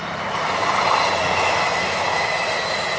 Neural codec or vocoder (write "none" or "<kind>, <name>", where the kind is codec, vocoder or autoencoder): none